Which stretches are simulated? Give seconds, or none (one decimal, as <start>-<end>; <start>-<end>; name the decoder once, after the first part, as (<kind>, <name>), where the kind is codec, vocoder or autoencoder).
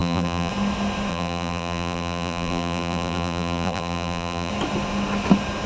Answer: 0.0-0.5 (vocoder, BigVGAN v2); 1.1-4.5